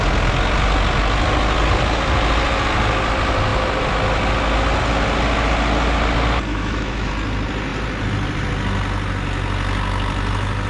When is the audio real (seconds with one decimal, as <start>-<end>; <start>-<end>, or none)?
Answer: 0.0-6.5; 7.1-10.7